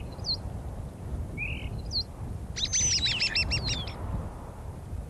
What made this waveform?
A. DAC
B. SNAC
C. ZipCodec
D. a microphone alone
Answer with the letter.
D